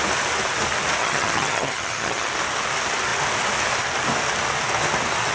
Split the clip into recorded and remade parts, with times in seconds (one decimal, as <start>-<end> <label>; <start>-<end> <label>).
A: 0.0-1.0 recorded; 1.0-2.3 remade; 2.3-5.3 recorded